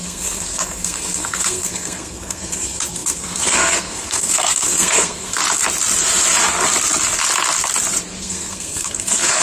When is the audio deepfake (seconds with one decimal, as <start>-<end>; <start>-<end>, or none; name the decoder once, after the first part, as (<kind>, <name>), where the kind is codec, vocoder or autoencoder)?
0.0-5.4 (codec, SNAC); 8.2-9.4